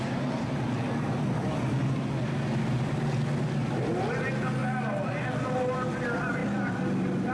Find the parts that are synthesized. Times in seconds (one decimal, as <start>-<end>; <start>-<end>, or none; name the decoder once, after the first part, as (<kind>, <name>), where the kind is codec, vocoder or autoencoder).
none